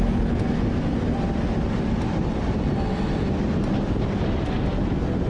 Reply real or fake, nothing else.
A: real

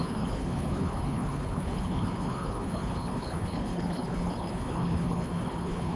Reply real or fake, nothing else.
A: fake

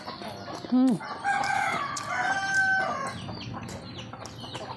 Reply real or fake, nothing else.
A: real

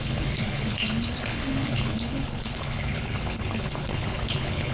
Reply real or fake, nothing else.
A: fake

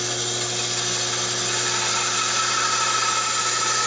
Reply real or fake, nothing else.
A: real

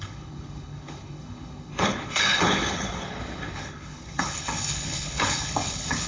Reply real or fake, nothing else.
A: fake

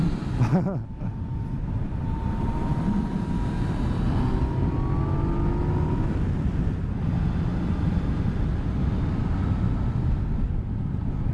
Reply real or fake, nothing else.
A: real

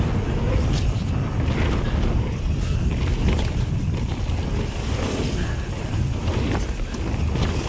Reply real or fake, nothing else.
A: real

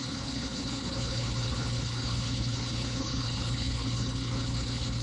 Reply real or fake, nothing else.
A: fake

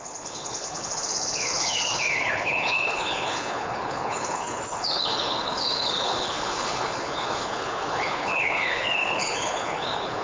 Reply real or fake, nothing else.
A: fake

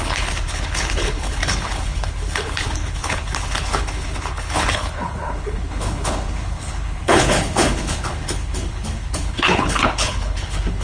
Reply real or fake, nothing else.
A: fake